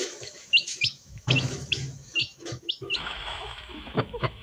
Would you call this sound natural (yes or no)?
no